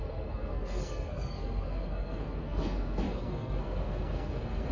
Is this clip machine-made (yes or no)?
yes